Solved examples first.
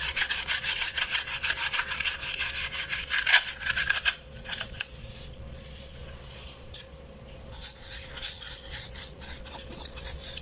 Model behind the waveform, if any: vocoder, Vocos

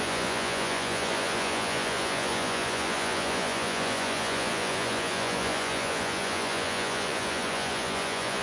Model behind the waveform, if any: vocoder, Vocos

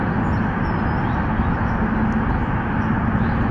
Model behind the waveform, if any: none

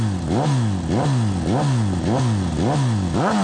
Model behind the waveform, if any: none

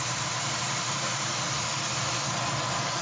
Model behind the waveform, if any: none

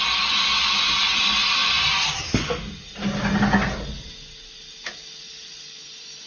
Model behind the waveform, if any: none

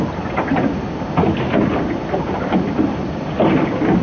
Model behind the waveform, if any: none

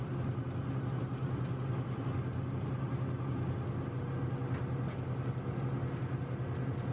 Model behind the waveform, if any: none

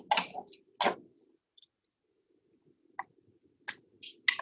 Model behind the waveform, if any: none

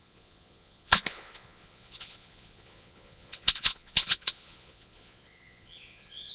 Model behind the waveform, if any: vocoder, Vocos